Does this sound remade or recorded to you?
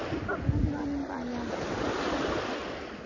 recorded